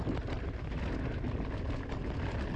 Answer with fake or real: real